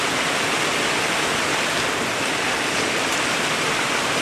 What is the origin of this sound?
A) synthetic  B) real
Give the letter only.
B